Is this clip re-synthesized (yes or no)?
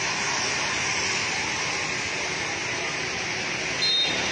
no